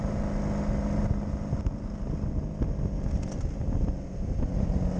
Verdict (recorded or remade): recorded